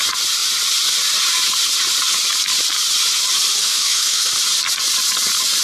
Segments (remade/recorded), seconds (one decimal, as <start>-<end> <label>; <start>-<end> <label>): 0.0-3.6 recorded; 3.6-4.3 remade; 4.3-5.6 recorded